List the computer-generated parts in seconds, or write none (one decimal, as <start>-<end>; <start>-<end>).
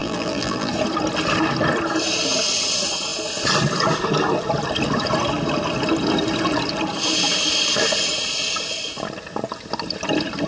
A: 0.0-0.7